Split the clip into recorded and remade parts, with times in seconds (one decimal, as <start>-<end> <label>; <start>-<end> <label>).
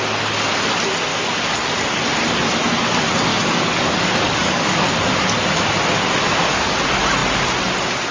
0.0-1.1 recorded; 1.1-2.0 remade; 2.0-3.3 recorded; 3.3-4.9 remade; 4.9-8.1 recorded